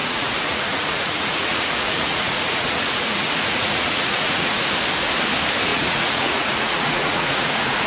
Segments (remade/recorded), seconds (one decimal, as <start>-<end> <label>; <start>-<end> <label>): 0.0-4.7 remade; 4.7-5.7 recorded; 5.7-7.9 remade